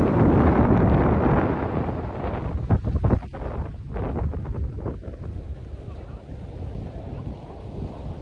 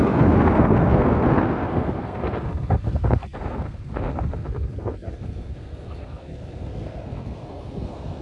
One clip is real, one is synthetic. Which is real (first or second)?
first